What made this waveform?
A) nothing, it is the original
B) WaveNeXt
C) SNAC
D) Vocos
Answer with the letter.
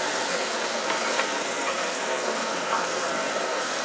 C